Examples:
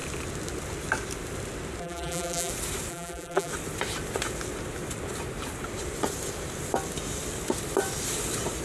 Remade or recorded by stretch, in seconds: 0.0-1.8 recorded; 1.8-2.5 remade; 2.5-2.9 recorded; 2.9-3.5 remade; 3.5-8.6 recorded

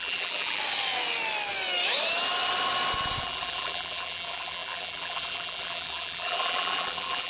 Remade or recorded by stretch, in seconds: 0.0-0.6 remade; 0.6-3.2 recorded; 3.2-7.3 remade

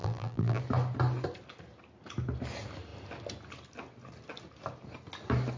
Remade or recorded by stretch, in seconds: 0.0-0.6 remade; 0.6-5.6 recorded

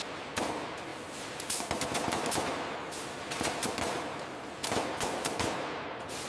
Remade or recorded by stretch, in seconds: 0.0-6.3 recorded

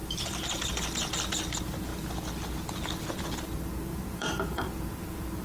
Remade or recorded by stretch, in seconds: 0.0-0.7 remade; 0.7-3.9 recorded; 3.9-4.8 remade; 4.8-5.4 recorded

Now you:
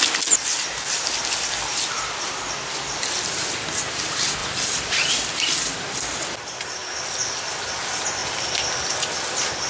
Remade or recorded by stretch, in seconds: 0.0-1.7 recorded; 1.7-2.8 remade; 2.8-4.4 recorded; 4.4-5.1 remade; 5.1-9.7 recorded

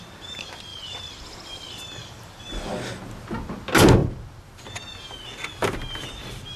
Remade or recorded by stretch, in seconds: 0.0-0.7 recorded; 0.7-1.5 remade; 1.5-2.0 recorded; 2.0-2.7 remade; 2.7-4.0 recorded; 4.0-4.6 remade; 4.6-6.6 recorded

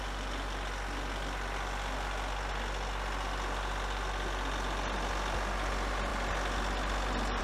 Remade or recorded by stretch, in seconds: 0.0-7.4 recorded